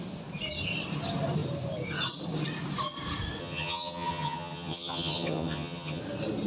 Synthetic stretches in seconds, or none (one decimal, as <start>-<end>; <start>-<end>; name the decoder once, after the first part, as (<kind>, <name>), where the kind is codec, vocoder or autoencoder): 3.4-6.0 (vocoder, HiFi-GAN)